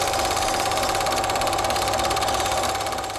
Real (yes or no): no